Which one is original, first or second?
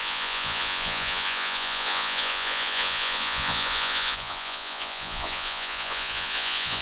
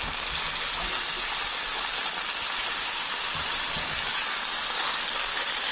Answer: second